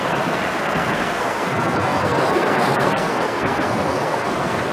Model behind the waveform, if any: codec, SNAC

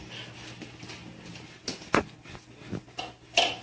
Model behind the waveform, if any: none